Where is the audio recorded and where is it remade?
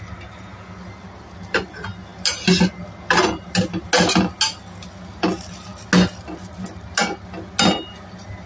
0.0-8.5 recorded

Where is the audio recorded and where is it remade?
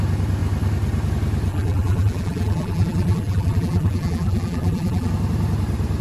0.0-1.5 recorded; 1.5-5.1 remade; 5.1-6.0 recorded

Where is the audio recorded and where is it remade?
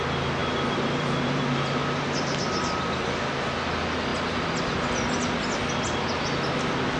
0.0-0.4 recorded; 0.4-1.4 remade; 1.4-1.8 recorded; 1.8-3.3 remade; 3.3-4.1 recorded; 4.1-5.1 remade; 5.1-7.0 recorded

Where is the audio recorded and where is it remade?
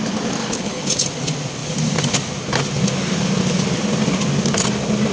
0.0-0.4 recorded; 0.4-0.9 remade; 0.9-5.1 recorded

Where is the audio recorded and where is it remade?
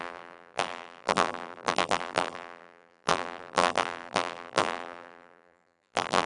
0.0-6.3 remade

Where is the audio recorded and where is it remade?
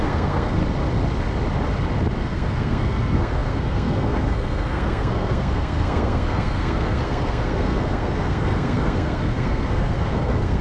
0.0-0.6 remade; 0.6-2.2 recorded; 2.2-10.6 remade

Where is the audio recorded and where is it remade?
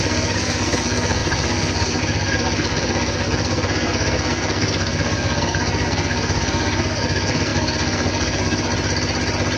0.0-8.7 remade; 8.7-9.6 recorded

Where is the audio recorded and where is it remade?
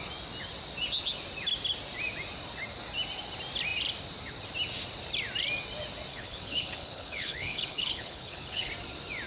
0.0-6.1 recorded; 6.1-8.7 remade; 8.7-9.3 recorded